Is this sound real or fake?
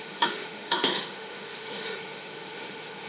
fake